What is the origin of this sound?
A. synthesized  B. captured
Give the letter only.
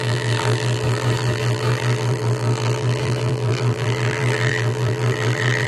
A